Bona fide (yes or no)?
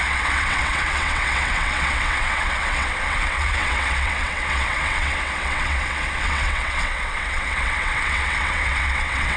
no